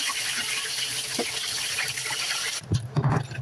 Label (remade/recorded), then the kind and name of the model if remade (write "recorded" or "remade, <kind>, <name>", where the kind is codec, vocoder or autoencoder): recorded